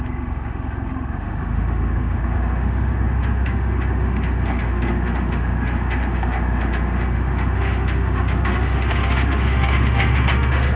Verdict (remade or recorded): remade